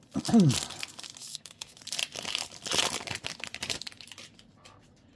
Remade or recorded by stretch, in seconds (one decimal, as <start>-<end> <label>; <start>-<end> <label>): 0.0-1.2 recorded; 1.2-1.8 remade; 1.8-5.2 recorded